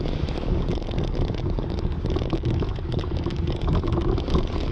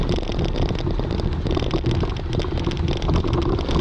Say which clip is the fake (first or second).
first